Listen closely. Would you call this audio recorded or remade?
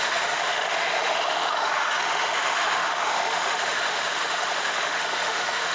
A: remade